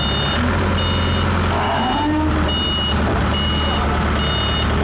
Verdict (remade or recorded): recorded